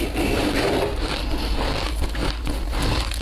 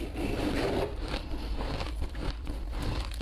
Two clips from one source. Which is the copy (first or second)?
second